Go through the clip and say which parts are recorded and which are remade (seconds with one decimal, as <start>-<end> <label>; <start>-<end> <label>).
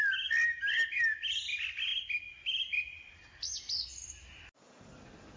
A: 0.0-5.4 recorded